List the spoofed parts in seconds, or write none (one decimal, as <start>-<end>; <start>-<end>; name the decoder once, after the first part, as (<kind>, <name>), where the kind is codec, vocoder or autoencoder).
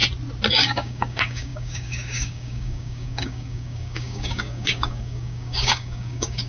0.5-6.5 (codec, DAC)